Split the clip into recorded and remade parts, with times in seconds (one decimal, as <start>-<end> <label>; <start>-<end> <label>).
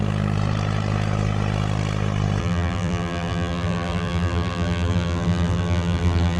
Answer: 0.0-2.4 recorded; 2.4-6.4 remade